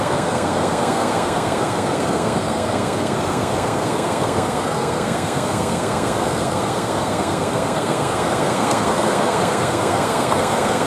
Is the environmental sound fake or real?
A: fake